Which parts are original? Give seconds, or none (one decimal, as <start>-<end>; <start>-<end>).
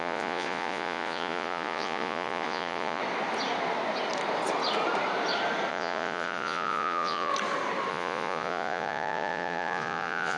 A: 3.0-5.7; 7.3-7.9